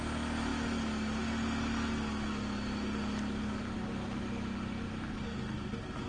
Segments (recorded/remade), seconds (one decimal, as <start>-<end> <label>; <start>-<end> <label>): 0.0-6.1 recorded